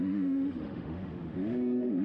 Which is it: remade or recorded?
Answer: remade